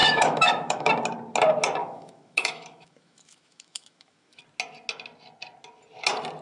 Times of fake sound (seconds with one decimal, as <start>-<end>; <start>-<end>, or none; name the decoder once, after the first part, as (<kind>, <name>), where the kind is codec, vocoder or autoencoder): 0.0-0.9 (autoencoder, DAC-VAE); 1.8-4.4